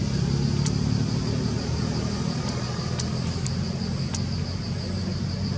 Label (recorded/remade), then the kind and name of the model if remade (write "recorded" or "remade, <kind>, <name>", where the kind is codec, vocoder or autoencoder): recorded